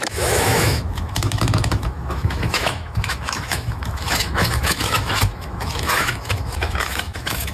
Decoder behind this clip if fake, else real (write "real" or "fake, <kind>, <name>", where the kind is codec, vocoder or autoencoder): fake, autoencoder, DAC-VAE